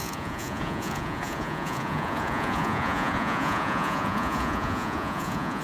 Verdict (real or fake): fake